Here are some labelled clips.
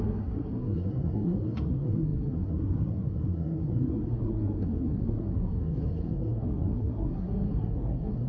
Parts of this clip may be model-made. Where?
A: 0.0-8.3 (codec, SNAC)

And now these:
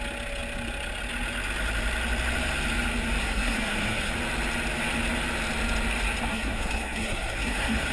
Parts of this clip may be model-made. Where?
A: 3.2-4.1 (codec, SNAC); 6.3-7.9